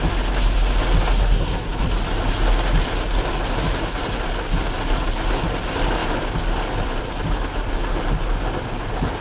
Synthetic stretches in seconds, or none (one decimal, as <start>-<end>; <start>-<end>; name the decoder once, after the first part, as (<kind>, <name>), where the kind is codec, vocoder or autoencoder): 1.2-1.8 (codec, SNAC)